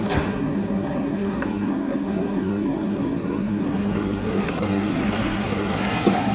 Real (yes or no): no